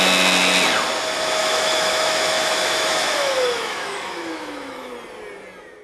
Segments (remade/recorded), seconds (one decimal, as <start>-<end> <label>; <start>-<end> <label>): 0.0-1.4 recorded; 1.4-4.9 remade; 4.9-5.8 recorded